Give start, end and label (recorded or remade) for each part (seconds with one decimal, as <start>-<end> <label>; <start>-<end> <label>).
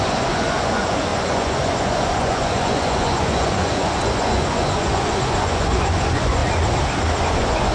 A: 0.0-6.4 remade; 6.4-7.2 recorded; 7.2-7.7 remade